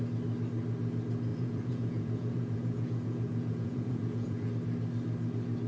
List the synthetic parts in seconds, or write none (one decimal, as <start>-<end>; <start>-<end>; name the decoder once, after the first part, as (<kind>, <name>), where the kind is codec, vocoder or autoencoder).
1.3-4.5 (vocoder, Vocos)